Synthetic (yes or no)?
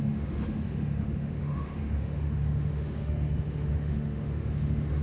yes